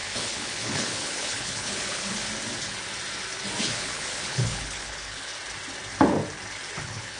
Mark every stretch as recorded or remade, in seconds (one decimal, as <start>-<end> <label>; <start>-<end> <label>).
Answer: 0.0-2.2 remade; 2.2-3.6 recorded; 3.6-5.3 remade; 5.3-6.8 recorded; 6.8-7.2 remade